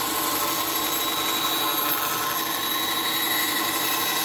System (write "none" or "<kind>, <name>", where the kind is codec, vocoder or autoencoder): none